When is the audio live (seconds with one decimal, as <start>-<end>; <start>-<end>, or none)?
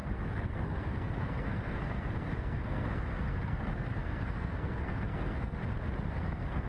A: 5.6-6.1